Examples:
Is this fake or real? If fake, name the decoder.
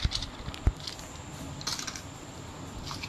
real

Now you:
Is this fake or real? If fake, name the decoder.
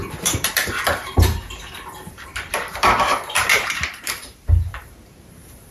fake, vocoder, BigVGAN v2